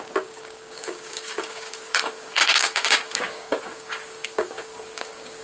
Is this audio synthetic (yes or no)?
yes